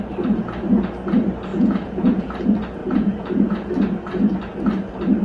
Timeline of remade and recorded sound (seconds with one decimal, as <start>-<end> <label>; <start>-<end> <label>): 0.0-1.5 recorded; 1.5-2.4 remade; 2.4-2.8 recorded; 2.8-3.7 remade; 3.7-5.2 recorded